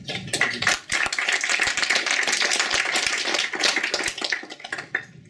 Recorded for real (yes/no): yes